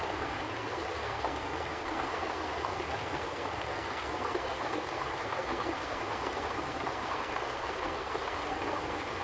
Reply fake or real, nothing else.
fake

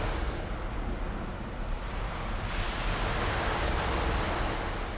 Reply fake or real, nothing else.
real